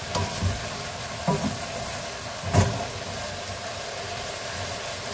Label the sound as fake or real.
real